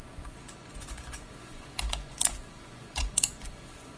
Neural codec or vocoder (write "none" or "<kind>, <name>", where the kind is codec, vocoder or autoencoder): vocoder, Vocos